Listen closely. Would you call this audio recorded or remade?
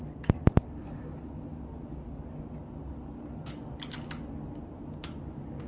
recorded